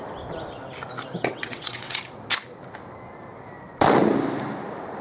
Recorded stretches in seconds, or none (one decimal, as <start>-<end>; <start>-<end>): 0.0-1.2; 2.0-5.0

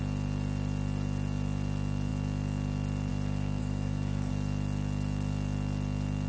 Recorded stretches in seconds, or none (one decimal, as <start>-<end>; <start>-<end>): 0.0-3.6; 4.3-6.3

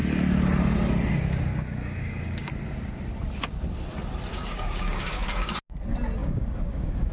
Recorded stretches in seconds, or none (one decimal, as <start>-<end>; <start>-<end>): 0.0-1.5; 2.5-4.3; 5.5-6.2

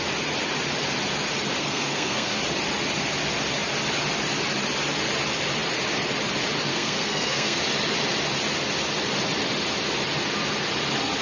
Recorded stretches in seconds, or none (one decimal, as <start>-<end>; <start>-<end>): 0.0-1.6; 2.4-6.7; 7.6-11.2

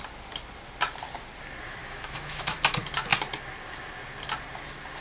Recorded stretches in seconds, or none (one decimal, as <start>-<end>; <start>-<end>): 0.0-1.8; 2.6-5.0

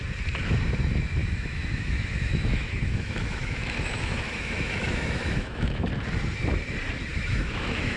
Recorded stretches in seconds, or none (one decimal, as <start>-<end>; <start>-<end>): 0.0-1.2; 5.9-7.1